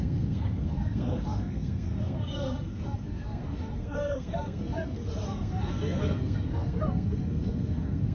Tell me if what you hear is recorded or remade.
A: remade